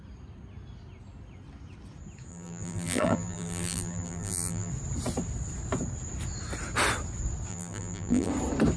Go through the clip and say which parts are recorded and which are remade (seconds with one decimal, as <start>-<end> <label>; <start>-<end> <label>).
0.0-2.3 recorded; 2.3-4.7 remade; 4.7-7.5 recorded; 7.5-8.3 remade; 8.3-8.8 recorded